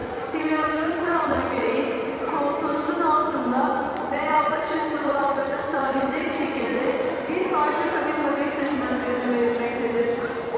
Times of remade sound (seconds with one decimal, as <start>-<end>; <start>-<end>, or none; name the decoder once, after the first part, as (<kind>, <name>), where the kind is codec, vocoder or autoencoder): 0.0-1.7 (vocoder, Vocos); 3.7-7.1